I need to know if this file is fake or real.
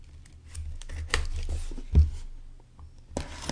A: real